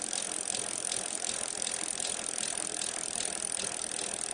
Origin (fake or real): real